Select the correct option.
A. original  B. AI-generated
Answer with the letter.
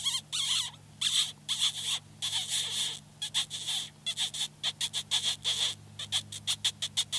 A